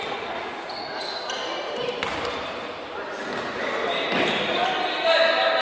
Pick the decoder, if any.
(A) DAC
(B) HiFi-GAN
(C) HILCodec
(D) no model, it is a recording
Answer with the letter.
D